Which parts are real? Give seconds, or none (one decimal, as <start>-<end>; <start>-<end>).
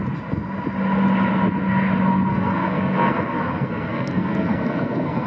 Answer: 0.0-2.3